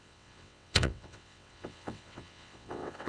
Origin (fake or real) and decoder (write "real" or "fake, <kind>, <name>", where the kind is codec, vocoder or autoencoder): fake, vocoder, WaveNeXt